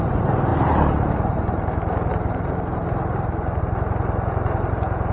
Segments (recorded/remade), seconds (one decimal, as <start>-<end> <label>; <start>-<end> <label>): 0.0-5.1 recorded